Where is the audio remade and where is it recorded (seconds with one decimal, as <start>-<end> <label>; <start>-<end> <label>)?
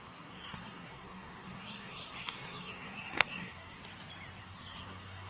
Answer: 0.0-3.8 remade; 3.8-4.4 recorded; 4.4-5.3 remade